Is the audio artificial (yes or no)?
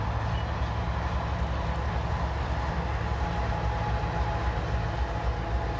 no